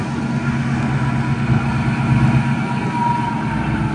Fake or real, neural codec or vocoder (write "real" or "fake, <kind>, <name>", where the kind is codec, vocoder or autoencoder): real